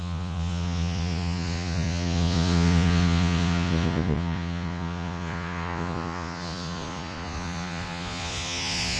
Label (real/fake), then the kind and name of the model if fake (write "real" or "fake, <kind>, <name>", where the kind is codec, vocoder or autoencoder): fake, vocoder, Vocos